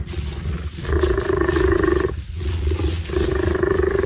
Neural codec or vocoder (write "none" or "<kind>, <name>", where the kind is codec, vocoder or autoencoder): vocoder, Vocos